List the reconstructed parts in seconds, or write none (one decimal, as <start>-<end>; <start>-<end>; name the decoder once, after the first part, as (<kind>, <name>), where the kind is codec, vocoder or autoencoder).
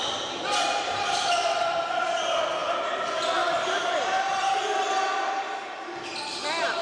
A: none